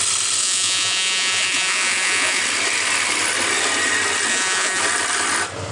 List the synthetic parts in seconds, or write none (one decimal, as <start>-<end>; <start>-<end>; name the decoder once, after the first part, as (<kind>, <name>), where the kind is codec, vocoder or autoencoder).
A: 0.4-2.4 (vocoder, Vocos); 4.3-4.8